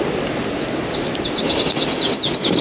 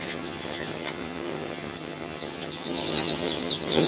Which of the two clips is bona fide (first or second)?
first